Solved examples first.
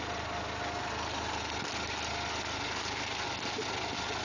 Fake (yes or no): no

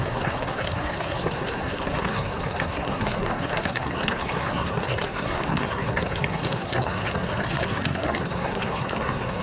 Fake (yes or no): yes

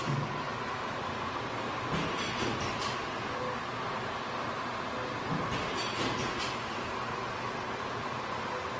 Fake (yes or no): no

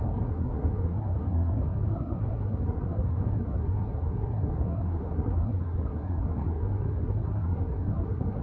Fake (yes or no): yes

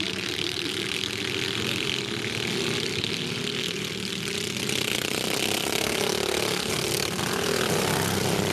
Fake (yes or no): no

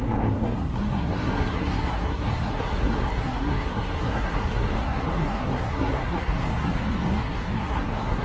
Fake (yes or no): yes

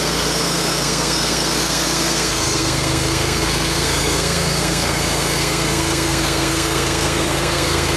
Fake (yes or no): yes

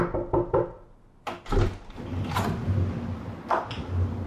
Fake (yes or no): no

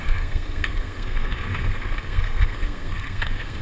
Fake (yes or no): yes